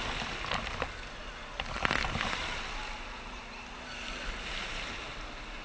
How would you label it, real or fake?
real